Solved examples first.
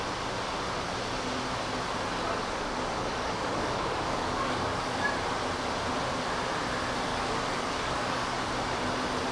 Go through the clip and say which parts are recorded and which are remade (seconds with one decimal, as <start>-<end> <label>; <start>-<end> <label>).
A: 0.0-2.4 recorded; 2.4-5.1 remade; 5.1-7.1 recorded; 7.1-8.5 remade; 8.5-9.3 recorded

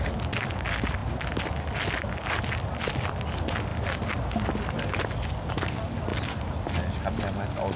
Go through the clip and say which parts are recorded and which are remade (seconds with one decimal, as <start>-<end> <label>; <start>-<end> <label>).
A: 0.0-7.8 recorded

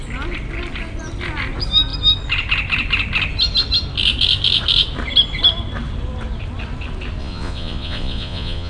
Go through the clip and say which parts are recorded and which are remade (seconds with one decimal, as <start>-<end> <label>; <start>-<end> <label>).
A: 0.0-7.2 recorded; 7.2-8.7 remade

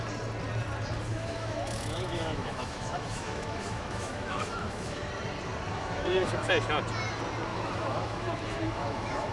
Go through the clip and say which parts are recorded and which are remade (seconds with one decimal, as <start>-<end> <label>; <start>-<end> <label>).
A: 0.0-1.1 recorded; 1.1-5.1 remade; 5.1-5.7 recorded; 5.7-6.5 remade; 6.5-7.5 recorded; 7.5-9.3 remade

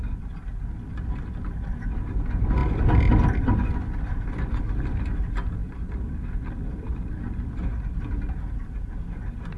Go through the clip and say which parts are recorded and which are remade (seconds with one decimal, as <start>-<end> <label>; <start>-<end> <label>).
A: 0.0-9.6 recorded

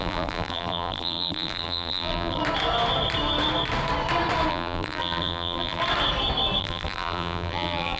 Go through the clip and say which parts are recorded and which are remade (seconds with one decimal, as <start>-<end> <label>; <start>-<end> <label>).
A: 0.0-2.4 remade; 2.4-4.5 recorded; 4.5-5.8 remade; 5.8-6.6 recorded; 6.6-8.0 remade

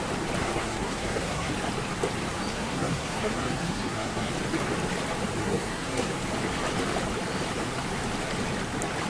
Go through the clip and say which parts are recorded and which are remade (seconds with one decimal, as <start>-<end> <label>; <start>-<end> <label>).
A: 0.0-0.4 recorded; 0.4-1.5 remade; 1.5-2.5 recorded; 2.5-4.3 remade; 4.3-5.4 recorded; 5.4-6.1 remade; 6.1-9.1 recorded

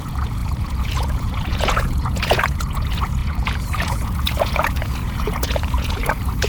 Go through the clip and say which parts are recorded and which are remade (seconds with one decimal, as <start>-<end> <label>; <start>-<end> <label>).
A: 0.0-6.5 remade